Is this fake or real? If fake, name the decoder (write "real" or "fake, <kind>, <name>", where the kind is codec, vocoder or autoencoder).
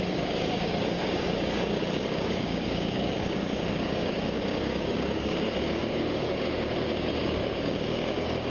fake, codec, DAC